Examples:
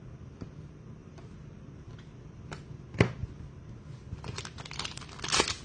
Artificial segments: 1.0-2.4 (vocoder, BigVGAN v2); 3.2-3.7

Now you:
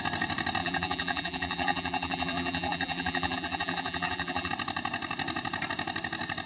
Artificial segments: 0.6-4.5 (vocoder, BigVGAN v2)

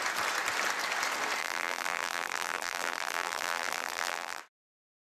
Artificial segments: 1.4-4.4 (vocoder, BigVGAN v2)